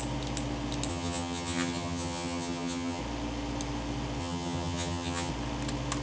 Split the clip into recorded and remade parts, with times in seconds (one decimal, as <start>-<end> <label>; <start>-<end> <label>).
0.0-0.9 recorded; 0.9-3.0 remade; 3.0-4.2 recorded; 4.2-5.3 remade; 5.3-6.0 recorded